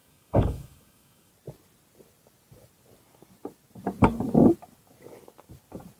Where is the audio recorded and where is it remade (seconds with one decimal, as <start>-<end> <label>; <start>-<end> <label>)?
0.0-1.3 remade; 1.3-6.0 recorded